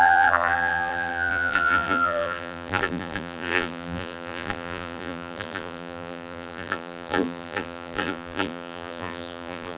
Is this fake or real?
fake